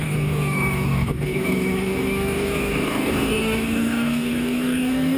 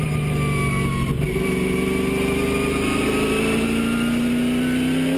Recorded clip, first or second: second